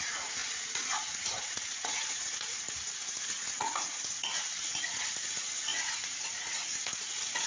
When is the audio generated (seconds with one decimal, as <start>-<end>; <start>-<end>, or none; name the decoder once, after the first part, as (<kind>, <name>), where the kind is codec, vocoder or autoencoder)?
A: 0.0-7.5 (vocoder, Vocos)